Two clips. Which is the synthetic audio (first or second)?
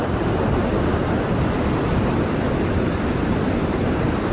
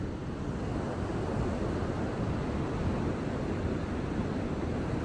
first